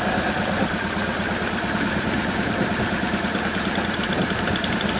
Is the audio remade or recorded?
recorded